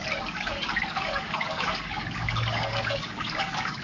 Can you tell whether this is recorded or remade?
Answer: remade